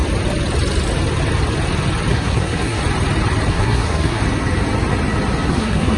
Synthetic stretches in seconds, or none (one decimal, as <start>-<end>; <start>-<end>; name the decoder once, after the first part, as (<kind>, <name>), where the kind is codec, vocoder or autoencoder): 2.1-2.8 (codec, SNAC); 3.5-4.2; 5.5-6.0